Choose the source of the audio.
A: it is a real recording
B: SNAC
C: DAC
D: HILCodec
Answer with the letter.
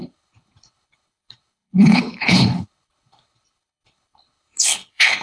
D